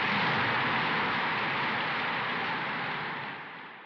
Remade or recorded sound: recorded